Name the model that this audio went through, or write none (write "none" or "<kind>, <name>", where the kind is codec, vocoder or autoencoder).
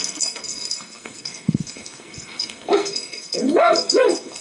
codec, SNAC